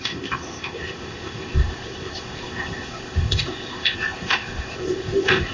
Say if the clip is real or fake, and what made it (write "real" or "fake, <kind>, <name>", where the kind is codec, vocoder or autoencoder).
fake, codec, ZipCodec